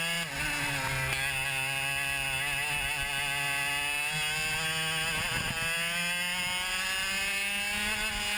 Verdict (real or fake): real